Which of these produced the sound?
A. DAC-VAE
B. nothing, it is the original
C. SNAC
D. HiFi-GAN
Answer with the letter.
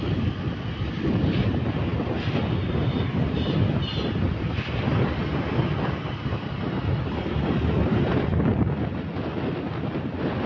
B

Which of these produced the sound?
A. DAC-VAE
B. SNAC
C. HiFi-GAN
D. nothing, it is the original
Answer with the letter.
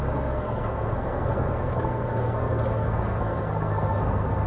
B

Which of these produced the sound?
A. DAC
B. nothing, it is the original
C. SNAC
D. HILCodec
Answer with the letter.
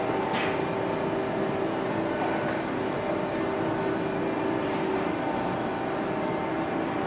B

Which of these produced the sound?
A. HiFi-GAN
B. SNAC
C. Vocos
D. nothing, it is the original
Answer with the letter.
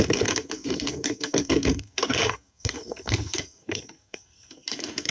B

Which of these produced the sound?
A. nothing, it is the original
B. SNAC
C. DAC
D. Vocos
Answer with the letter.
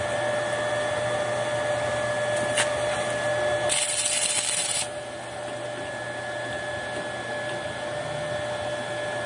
A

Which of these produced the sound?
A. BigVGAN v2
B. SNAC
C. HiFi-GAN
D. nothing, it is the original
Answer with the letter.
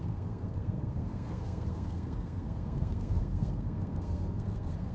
B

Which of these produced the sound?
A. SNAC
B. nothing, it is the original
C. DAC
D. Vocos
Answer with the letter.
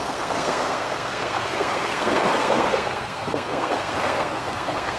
A